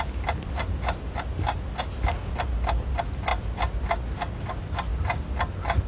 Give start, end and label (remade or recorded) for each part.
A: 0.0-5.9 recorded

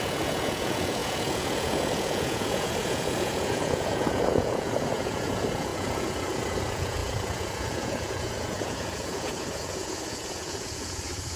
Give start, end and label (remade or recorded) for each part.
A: 0.0-11.4 remade

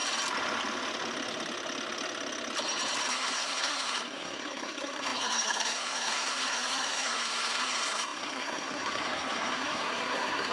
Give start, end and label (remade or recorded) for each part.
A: 0.0-3.1 recorded; 3.1-10.5 remade

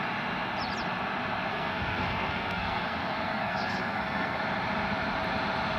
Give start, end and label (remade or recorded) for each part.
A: 0.0-1.5 recorded; 1.5-4.4 remade; 4.4-5.8 recorded